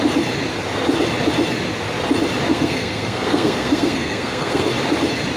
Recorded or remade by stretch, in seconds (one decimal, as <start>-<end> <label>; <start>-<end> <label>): 0.0-2.5 recorded; 2.5-4.7 remade; 4.7-5.4 recorded